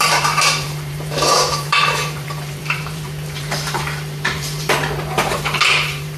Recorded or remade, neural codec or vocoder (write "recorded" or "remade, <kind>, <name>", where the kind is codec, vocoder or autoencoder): remade, vocoder, BigVGAN v2